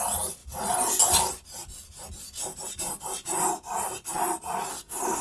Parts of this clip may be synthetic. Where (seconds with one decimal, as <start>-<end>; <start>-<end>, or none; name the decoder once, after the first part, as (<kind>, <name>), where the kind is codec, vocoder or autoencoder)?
4.7-5.2 (codec, SNAC)